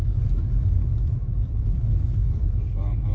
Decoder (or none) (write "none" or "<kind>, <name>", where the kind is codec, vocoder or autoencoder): codec, DAC